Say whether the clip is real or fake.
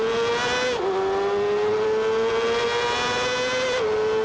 real